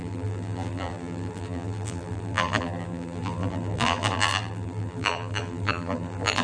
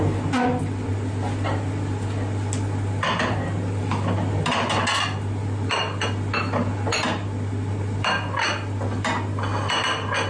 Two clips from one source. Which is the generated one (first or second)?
first